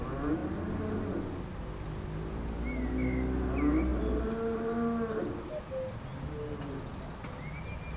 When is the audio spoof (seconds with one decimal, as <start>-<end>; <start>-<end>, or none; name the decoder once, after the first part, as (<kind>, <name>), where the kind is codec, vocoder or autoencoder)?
none